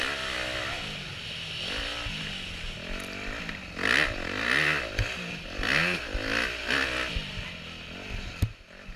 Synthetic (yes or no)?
no